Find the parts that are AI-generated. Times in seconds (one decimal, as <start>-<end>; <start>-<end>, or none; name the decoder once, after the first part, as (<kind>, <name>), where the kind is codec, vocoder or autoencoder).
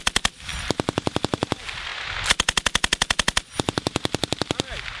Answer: none